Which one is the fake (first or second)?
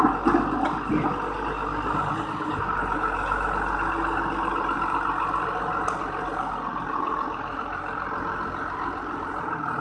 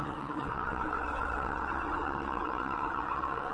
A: second